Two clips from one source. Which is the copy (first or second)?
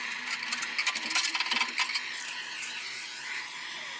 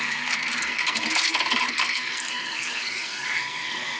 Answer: second